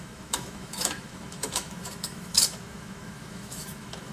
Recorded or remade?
remade